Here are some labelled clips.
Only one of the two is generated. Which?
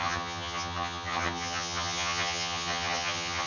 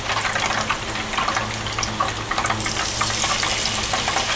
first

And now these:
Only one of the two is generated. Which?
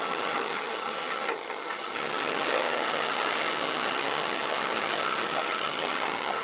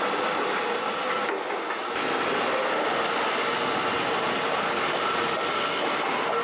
first